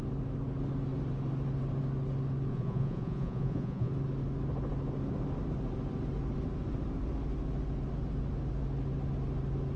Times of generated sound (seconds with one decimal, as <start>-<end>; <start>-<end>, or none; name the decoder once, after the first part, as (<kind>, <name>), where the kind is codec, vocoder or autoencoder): 2.5-3.9 (vocoder, Vocos)